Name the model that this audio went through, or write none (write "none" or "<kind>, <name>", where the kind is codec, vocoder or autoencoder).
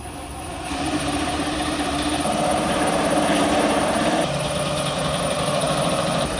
vocoder, BigVGAN v2